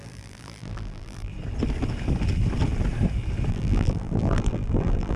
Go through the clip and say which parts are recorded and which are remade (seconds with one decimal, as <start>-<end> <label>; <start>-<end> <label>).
0.0-1.3 remade; 1.3-3.5 recorded; 3.5-5.2 remade